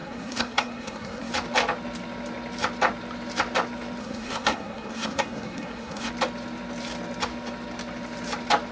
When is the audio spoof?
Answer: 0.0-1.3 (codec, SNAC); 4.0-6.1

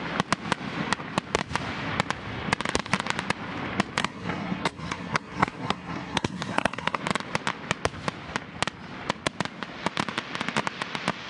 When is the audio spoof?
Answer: 4.0-7.0 (codec, SNAC)

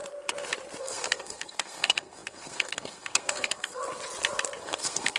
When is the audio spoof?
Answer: 0.8-3.8 (codec, SNAC); 4.6-5.2

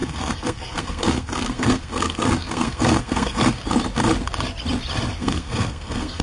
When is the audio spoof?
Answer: 0.0-3.6 (codec, SNAC); 5.2-6.2

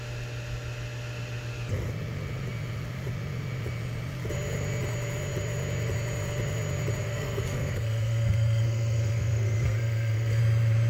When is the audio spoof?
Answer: 7.0-10.4 (codec, SNAC)